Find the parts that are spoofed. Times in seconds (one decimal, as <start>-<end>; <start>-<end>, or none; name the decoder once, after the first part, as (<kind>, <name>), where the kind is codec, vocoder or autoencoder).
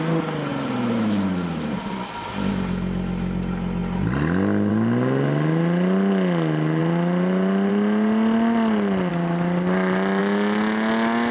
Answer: 0.5-2.5 (vocoder, BigVGAN v2); 6.8-7.7; 9.1-10.2